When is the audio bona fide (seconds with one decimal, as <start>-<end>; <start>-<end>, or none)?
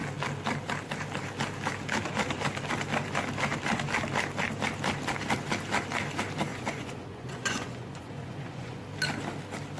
0.0-6.5; 8.8-9.8